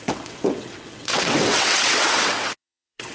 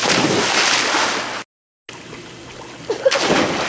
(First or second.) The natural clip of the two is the second